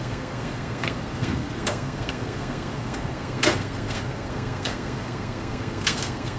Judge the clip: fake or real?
fake